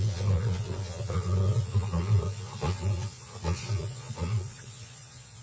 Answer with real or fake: fake